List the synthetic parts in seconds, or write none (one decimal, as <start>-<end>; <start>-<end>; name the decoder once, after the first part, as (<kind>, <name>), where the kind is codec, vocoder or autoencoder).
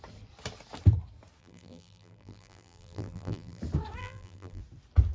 1.4-3.6 (vocoder, BigVGAN v2); 4.0-4.6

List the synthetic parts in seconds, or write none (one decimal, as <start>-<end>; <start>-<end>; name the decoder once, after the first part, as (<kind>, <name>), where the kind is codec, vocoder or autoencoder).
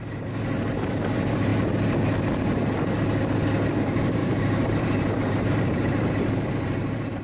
0.0-1.5 (vocoder, BigVGAN v2); 3.8-7.2